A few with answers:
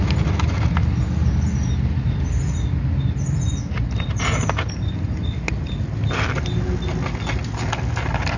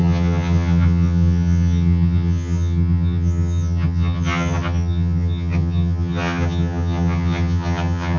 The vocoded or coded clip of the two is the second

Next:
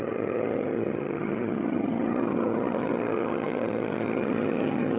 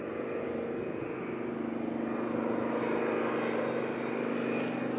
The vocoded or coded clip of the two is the first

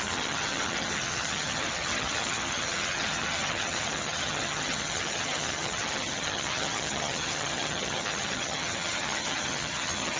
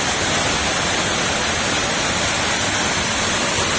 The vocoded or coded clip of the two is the first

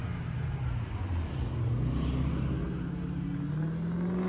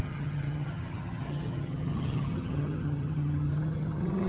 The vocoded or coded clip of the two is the second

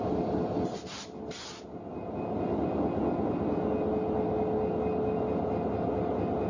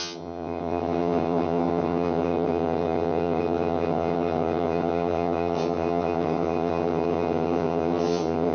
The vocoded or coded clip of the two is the second